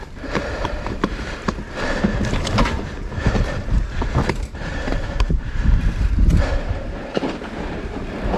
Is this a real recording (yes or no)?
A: no